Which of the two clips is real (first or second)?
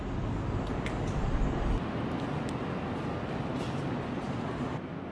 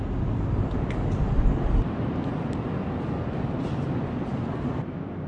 first